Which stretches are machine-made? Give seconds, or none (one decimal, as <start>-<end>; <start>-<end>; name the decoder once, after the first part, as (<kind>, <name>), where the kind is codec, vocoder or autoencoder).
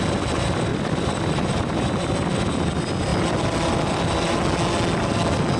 0.7-2.1 (vocoder, BigVGAN v2); 3.1-4.3